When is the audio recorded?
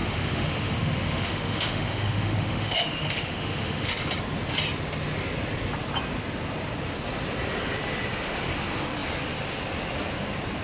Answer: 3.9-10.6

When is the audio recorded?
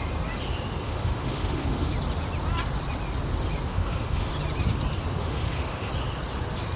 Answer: 0.0-0.8; 1.9-3.7; 4.3-5.2; 5.9-6.8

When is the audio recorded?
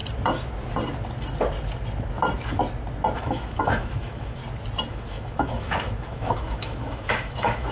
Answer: 0.0-3.2; 4.4-4.9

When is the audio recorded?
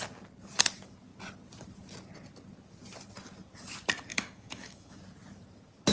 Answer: 0.0-4.1; 5.0-5.9